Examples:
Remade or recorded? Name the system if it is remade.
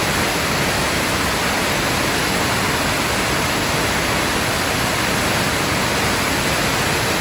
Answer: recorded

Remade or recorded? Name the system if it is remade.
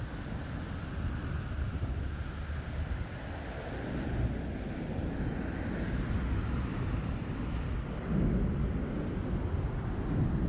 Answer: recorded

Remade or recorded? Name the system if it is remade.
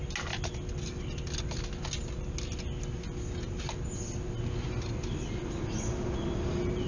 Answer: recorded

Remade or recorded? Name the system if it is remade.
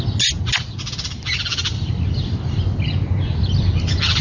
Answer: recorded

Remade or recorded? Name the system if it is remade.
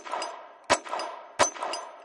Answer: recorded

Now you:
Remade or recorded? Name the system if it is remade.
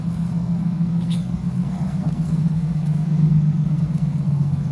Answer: remade, codec, SNAC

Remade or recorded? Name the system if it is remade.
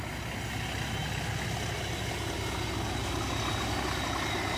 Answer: recorded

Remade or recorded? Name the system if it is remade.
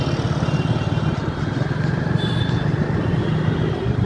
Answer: recorded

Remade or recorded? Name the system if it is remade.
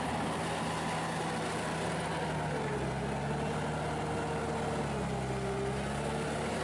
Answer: recorded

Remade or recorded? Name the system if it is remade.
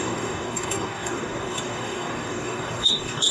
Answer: remade, codec, DAC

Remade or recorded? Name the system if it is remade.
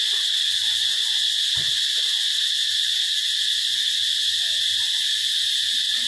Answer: recorded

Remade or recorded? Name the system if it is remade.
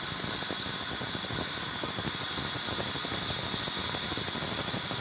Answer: recorded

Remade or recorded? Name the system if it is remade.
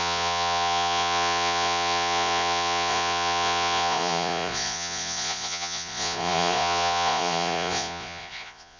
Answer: remade, vocoder, Vocos